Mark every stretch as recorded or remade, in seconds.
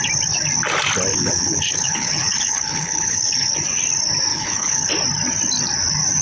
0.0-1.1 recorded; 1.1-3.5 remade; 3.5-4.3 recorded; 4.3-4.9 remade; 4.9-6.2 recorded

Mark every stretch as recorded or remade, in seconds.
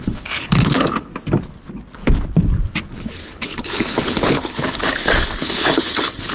0.0-1.1 remade; 1.1-3.0 recorded; 3.0-6.3 remade